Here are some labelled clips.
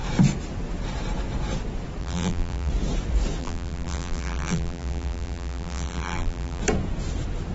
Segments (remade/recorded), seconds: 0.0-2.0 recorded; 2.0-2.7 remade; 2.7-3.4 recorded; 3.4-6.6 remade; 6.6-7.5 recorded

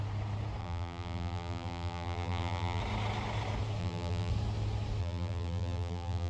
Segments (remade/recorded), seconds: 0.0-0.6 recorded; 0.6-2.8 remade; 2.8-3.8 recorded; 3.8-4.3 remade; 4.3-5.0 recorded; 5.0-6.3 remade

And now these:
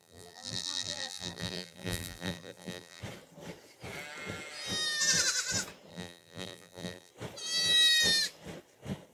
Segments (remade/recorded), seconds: 0.0-3.0 remade; 3.0-5.9 recorded; 5.9-7.1 remade; 7.1-9.1 recorded

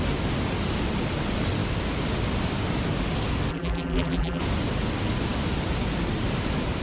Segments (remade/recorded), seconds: 0.0-3.5 recorded; 3.5-4.4 remade; 4.4-6.8 recorded

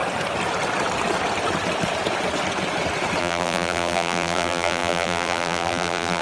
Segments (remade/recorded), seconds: 0.0-3.2 recorded; 3.2-6.2 remade

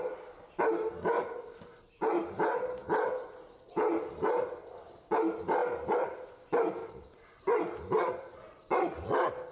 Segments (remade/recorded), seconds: 0.0-5.6 recorded; 5.6-6.3 remade; 6.3-6.8 recorded; 6.8-7.4 remade; 7.4-9.5 recorded

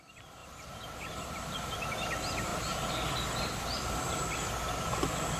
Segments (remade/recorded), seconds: 0.0-0.4 recorded; 0.4-0.9 remade; 0.9-2.5 recorded; 2.5-4.2 remade; 4.2-5.4 recorded

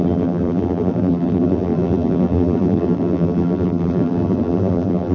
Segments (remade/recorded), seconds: 0.0-5.1 remade